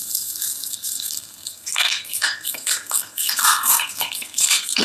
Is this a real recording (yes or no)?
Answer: no